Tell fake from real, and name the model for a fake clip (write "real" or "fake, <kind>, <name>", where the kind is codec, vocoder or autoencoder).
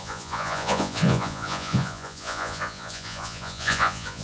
fake, vocoder, Vocos